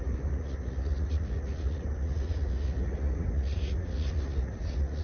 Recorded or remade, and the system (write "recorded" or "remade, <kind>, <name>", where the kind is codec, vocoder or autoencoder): remade, vocoder, Vocos